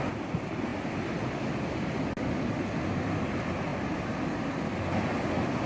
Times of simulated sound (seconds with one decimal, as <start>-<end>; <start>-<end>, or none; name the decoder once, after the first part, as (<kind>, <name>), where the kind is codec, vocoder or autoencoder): none